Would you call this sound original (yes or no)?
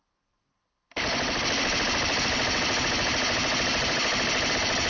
no